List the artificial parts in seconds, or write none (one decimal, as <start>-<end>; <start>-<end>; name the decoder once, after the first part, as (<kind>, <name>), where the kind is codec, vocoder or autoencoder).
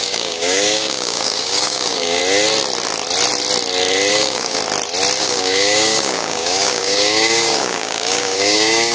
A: 0.0-2.2 (codec, DAC); 4.1-4.6; 5.2-8.9